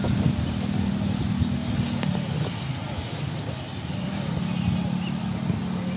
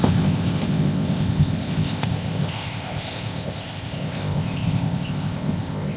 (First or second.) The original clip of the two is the first